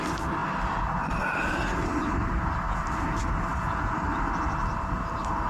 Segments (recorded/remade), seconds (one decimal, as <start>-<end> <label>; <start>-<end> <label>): 0.0-3.5 recorded; 3.5-4.0 remade; 4.0-5.5 recorded